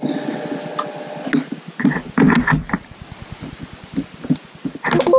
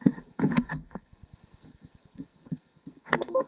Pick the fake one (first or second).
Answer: second